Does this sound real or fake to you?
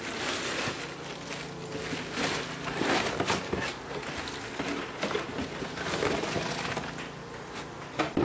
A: real